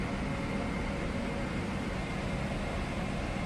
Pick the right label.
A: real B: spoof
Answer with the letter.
A